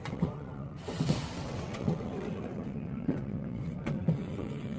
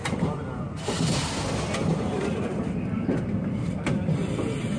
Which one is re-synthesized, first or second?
first